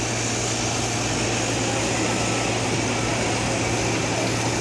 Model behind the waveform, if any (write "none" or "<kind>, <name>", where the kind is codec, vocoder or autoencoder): none